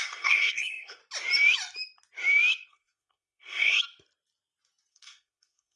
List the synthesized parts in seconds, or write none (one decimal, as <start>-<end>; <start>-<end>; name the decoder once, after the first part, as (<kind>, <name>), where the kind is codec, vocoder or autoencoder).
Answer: 0.0-1.0 (codec, SNAC); 2.7-3.8; 4.9-5.8